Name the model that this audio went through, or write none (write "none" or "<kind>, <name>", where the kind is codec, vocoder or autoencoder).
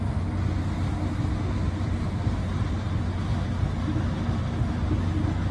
none